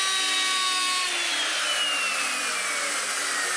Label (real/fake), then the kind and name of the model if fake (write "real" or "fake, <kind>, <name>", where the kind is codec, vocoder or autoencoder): real